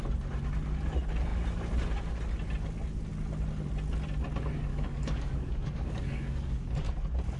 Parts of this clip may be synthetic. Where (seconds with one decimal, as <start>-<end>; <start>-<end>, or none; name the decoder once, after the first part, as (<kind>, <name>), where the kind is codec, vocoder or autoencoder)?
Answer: 4.7-6.9 (codec, DAC)